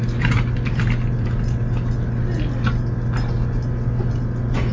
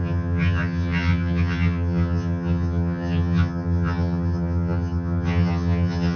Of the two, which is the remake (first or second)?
second